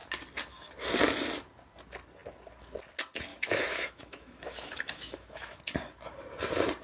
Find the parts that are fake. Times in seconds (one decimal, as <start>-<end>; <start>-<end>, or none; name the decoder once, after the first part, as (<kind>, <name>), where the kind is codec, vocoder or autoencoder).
3.3-5.6 (autoencoder, DAC-VAE)